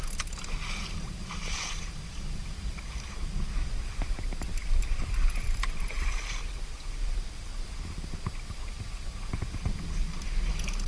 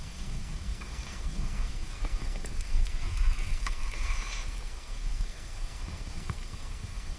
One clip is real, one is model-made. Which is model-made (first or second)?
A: second